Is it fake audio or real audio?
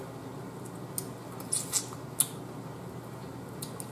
real